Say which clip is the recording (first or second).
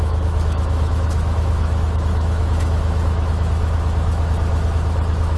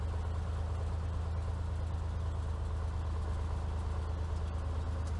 second